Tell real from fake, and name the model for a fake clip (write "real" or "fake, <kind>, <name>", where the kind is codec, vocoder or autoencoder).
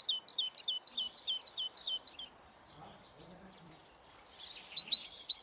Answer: fake, vocoder, BigVGAN v2